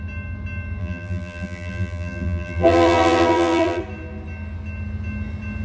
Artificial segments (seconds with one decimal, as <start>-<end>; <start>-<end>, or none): 0.8-3.8